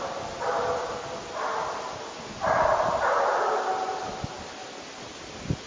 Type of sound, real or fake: real